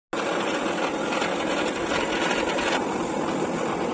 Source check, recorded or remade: recorded